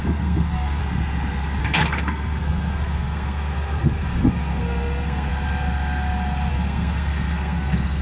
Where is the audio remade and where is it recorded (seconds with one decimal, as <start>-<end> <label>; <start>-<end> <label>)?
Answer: 0.0-0.8 remade; 0.8-1.6 recorded; 1.6-5.3 remade; 5.3-6.5 recorded; 6.5-8.0 remade